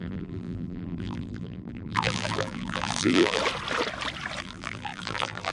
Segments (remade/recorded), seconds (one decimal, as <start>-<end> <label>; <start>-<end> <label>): 0.0-3.4 remade; 3.4-4.4 recorded; 4.4-5.5 remade